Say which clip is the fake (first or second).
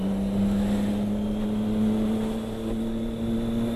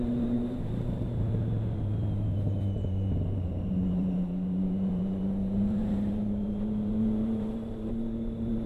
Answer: second